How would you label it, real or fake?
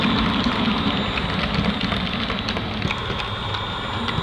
real